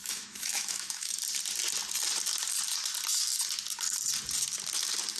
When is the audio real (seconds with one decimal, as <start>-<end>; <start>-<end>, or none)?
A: 1.2-5.2